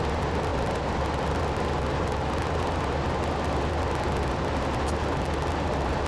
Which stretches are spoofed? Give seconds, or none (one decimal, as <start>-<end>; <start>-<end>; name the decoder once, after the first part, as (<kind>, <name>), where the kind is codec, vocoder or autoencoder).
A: none